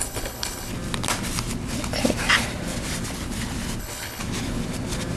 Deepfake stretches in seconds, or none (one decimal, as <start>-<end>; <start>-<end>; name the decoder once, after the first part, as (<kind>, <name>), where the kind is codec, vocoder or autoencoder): 0.0-0.7 (codec, HILCodec); 3.8-4.2